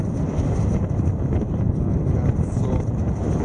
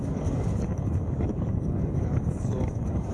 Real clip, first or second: first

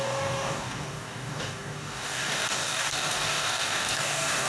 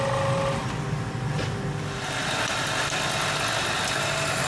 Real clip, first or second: second